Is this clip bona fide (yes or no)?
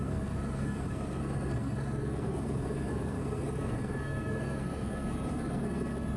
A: no